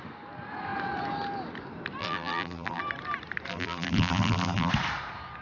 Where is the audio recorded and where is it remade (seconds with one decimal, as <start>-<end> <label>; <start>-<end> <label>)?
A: 0.0-2.0 recorded; 2.0-2.8 remade; 2.8-3.5 recorded; 3.5-4.7 remade; 4.7-5.4 recorded